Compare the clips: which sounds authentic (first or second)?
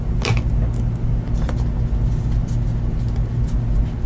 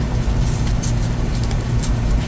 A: first